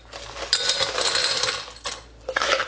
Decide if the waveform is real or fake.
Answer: real